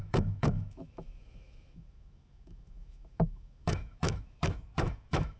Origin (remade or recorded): remade